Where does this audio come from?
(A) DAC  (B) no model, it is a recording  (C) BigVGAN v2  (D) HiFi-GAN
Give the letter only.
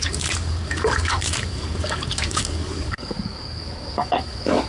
A